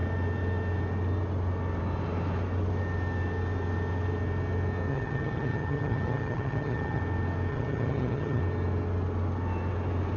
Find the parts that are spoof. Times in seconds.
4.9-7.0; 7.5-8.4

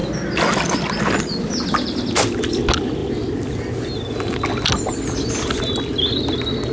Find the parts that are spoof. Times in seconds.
none

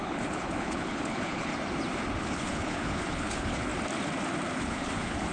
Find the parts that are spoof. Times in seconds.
0.0-1.5; 2.2-3.7; 4.6-5.3

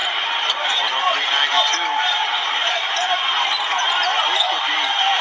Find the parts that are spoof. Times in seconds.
2.0-5.2

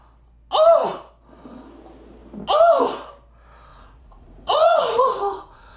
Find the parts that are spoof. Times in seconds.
3.7-5.8

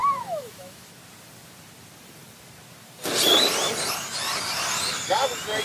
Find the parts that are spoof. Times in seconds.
0.0-0.9

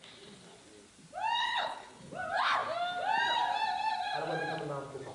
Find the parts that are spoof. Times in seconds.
1.4-2.1

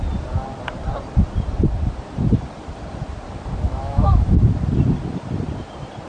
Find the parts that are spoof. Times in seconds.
3.7-4.3